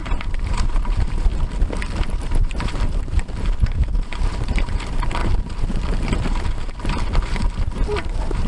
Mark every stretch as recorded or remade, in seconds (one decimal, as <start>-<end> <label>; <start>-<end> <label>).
0.0-1.3 remade; 1.3-2.0 recorded; 2.0-8.5 remade